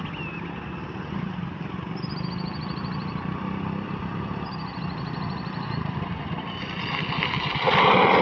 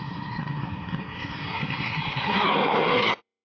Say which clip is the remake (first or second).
second